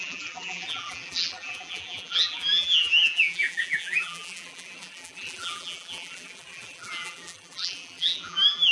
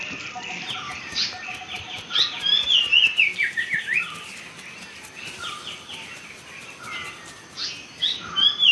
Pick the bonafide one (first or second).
second